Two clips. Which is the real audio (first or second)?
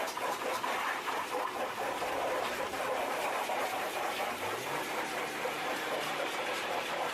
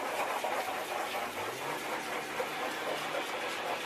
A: second